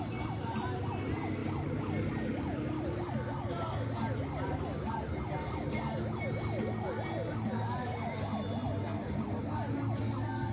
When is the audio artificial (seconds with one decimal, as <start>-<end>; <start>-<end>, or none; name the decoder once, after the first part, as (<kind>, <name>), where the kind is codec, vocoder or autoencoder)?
none